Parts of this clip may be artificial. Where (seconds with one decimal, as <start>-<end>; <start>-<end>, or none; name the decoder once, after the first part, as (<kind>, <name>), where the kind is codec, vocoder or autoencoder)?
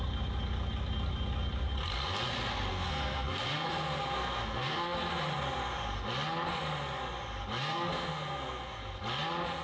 2.7-5.1 (codec, SNAC); 7.6-9.0